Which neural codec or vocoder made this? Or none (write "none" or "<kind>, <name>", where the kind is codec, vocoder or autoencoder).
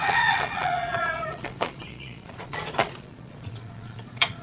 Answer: vocoder, Vocos